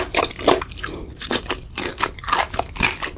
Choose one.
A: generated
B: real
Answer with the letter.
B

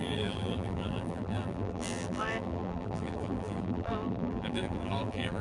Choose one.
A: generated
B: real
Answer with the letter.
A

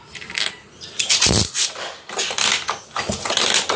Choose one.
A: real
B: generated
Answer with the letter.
A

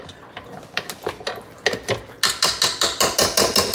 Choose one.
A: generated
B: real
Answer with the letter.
B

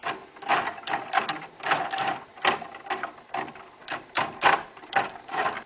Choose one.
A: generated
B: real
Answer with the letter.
A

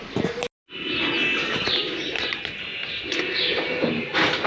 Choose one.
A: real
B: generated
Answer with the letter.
A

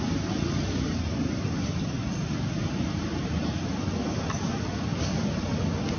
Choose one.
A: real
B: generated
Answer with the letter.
A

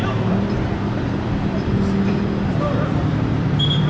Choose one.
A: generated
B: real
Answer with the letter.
A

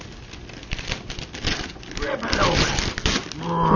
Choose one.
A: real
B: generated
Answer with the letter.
A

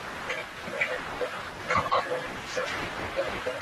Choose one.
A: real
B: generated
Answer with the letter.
A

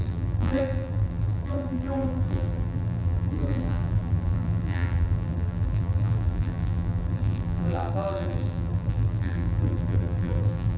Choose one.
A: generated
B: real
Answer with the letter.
A